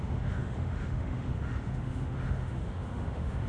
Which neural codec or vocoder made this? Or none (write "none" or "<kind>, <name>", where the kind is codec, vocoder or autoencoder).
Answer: autoencoder, DAC-VAE